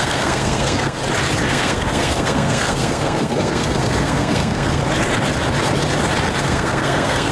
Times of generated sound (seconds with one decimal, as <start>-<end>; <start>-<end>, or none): 0.0-1.0; 1.5-4.8; 6.4-7.3